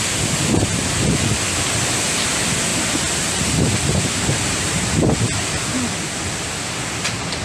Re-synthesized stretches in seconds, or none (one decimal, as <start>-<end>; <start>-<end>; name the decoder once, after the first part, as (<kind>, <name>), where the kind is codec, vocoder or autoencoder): 2.7-5.4 (vocoder, BigVGAN v2)